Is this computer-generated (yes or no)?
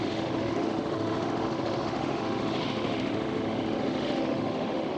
yes